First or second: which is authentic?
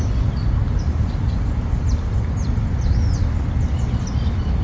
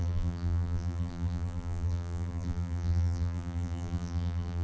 first